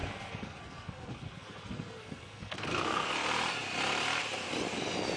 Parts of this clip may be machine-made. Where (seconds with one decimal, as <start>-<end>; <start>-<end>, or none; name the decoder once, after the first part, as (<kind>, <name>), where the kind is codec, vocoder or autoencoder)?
0.0-3.1 (codec, SNAC)